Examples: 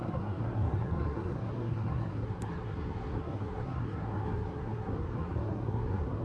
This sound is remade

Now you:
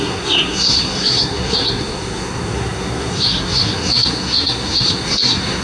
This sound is remade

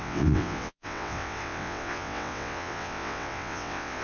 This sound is remade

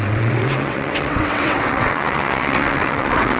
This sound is remade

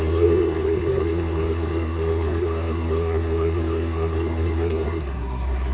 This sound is remade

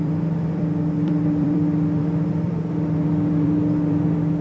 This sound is remade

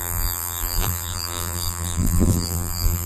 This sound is remade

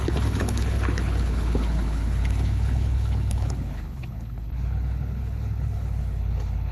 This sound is remade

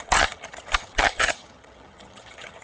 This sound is remade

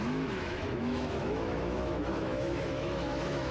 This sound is remade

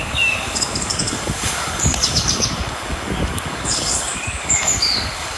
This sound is remade